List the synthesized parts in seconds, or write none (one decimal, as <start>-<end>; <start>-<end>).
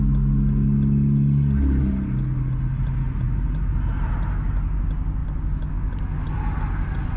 none